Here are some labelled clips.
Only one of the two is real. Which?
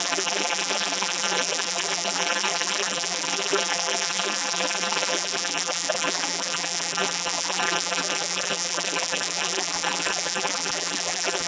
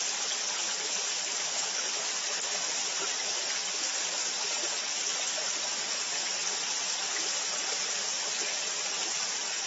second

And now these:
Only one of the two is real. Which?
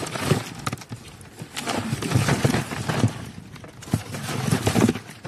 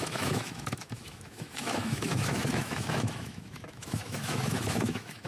first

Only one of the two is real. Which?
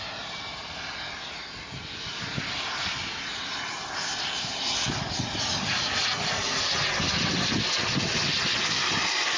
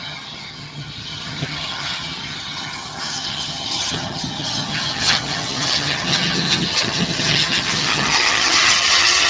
first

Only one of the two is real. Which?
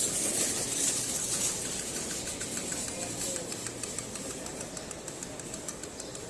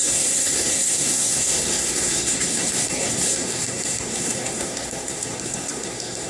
first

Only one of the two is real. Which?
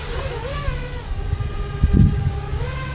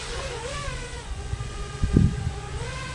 first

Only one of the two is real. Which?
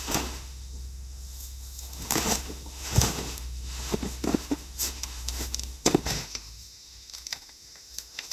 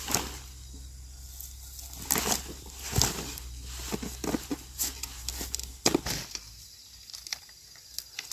second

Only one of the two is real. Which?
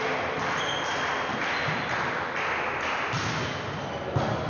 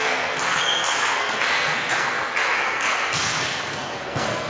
first